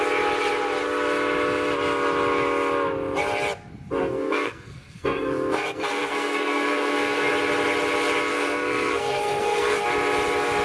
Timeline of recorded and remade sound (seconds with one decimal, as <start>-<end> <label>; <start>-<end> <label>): 0.0-4.0 recorded; 4.0-7.3 remade; 7.3-8.3 recorded; 8.3-9.8 remade; 9.8-10.6 recorded